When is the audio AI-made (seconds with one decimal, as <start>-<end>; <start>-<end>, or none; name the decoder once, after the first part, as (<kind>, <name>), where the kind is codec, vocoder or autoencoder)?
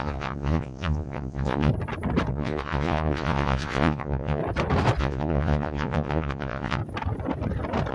0.0-1.7 (vocoder, Vocos); 2.3-4.4; 5.0-6.8